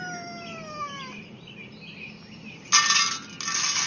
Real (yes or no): yes